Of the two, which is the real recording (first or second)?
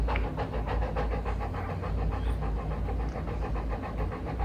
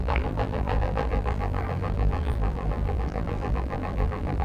first